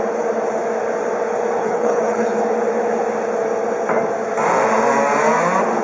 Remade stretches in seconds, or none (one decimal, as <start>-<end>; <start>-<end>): 1.6-2.4